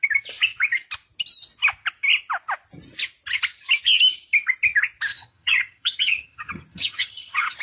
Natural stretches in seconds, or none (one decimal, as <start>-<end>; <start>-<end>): 0.0-5.1